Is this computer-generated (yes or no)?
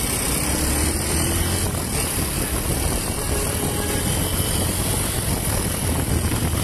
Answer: no